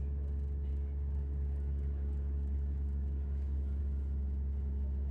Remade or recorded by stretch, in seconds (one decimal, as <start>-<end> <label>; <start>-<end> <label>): 0.0-0.7 recorded; 0.7-3.8 remade; 3.8-5.1 recorded